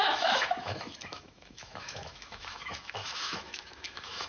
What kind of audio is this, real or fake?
fake